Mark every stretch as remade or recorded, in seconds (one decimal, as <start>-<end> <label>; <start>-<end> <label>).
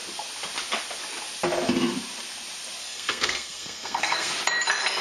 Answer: 0.0-2.8 recorded; 2.8-4.3 remade; 4.3-5.0 recorded